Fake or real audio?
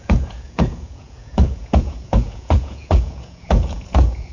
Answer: fake